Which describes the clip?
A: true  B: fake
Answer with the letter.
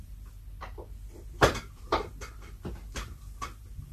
B